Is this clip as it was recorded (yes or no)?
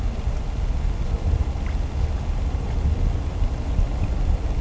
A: yes